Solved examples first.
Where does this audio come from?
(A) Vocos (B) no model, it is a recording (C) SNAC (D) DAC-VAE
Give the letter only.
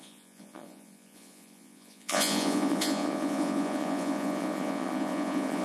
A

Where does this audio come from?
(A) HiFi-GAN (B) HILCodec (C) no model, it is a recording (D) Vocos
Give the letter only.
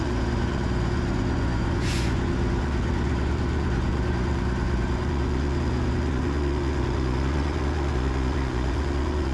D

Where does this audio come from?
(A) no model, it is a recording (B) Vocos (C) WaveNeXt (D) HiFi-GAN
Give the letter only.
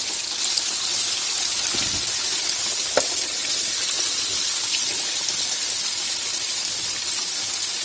A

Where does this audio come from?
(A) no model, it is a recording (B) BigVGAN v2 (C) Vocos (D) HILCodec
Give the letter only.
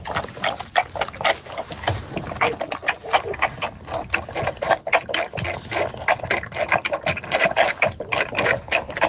A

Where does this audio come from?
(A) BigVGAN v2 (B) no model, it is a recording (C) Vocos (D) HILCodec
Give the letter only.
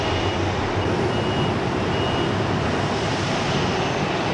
B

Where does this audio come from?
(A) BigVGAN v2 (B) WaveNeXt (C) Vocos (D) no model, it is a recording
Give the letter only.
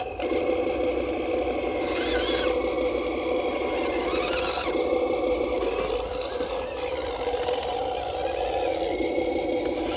D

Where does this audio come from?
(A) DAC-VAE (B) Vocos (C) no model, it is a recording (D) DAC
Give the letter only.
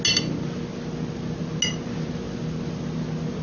C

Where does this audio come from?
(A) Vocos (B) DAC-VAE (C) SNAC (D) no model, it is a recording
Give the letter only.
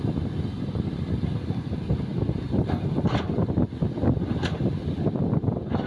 D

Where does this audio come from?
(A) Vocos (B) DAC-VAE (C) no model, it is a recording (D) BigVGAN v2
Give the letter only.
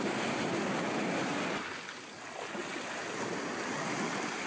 C